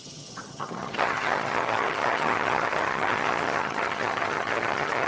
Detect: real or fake fake